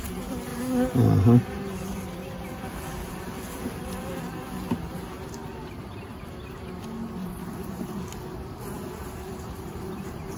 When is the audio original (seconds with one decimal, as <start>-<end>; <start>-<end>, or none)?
0.0-7.2; 7.9-9.0